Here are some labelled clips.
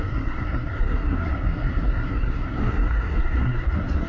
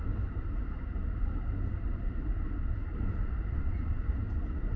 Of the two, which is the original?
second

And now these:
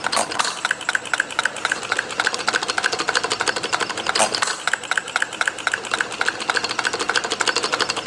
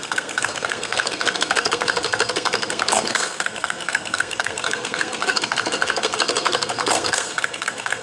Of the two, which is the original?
first